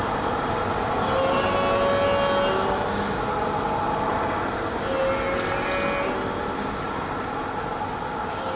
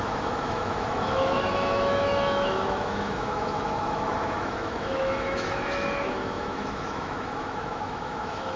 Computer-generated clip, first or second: second